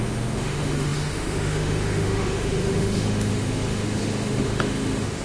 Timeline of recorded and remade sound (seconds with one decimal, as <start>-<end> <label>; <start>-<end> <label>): 0.0-5.2 remade